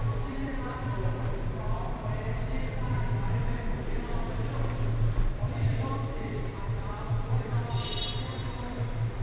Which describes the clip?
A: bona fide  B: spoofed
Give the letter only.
B